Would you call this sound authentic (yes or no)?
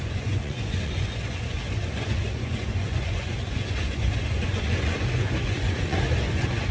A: no